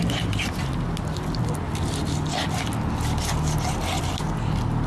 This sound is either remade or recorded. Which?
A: recorded